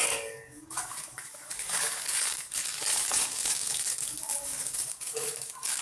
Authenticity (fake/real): fake